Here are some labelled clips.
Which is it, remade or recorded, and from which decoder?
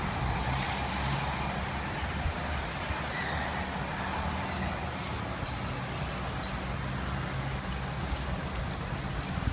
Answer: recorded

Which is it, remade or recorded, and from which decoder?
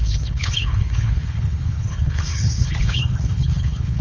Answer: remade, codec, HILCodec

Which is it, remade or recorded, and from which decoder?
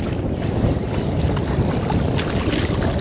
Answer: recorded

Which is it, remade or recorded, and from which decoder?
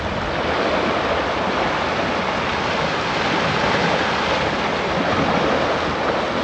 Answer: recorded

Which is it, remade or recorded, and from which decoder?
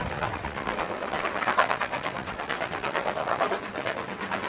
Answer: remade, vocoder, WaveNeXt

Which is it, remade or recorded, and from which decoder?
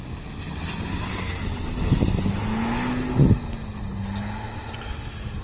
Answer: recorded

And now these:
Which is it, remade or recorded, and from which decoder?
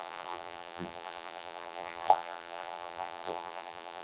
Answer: remade, vocoder, BigVGAN v2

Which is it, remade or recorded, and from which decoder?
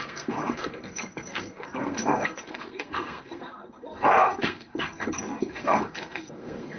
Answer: remade, codec, SNAC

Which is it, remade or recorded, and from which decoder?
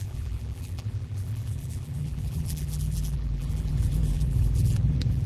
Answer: remade, vocoder, BigVGAN v2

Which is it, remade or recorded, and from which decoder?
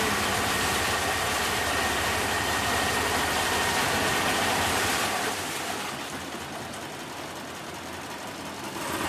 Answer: recorded